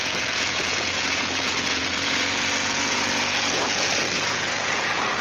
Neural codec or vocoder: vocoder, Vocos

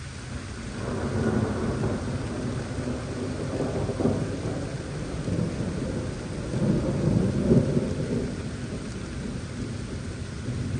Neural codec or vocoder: none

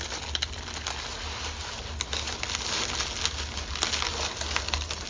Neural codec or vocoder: none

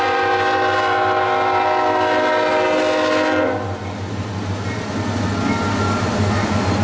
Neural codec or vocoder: none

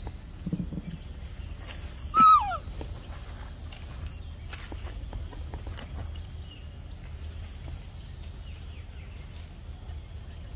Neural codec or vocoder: none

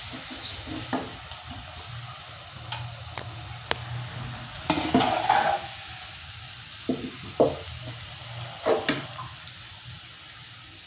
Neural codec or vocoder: none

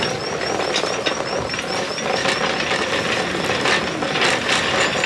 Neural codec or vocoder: none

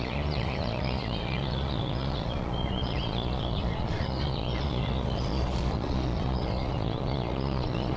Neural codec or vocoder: vocoder, Vocos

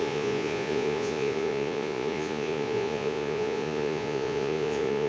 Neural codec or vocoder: vocoder, Vocos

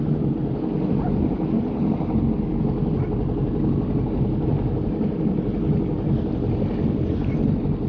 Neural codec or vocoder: none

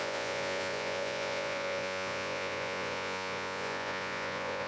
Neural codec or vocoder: vocoder, Vocos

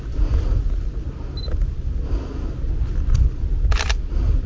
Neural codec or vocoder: none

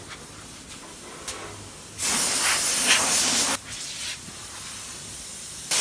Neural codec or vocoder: none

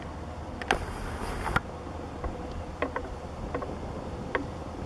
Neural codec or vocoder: none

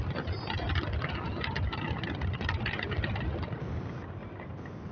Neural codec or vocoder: none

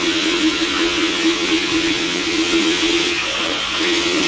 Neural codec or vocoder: vocoder, Vocos